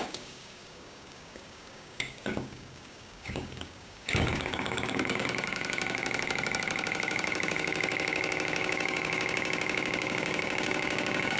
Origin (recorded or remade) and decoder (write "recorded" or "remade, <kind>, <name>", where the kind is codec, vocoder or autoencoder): remade, codec, DAC